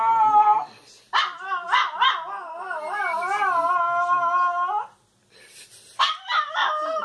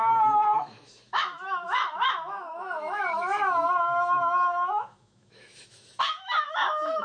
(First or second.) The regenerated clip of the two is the second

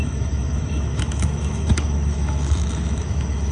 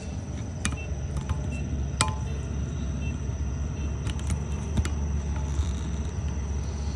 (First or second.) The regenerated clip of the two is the first